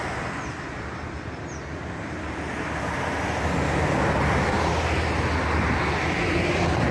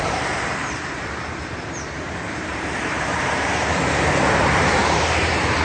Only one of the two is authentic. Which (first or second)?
first